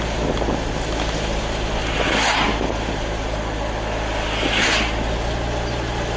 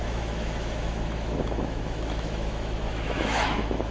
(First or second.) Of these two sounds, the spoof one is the second